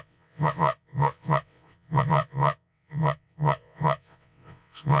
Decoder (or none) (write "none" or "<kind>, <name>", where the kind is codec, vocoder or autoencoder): vocoder, WaveNeXt